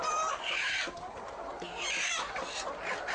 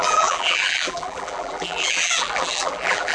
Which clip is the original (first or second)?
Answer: first